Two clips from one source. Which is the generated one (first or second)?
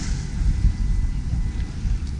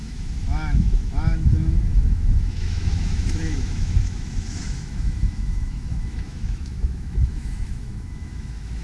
second